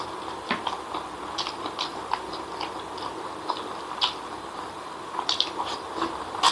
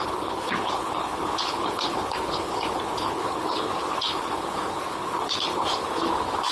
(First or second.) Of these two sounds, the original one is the first